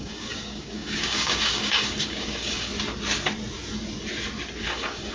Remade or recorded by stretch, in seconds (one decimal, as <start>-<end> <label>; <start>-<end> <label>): 0.0-2.7 remade; 2.7-4.6 recorded; 4.6-5.1 remade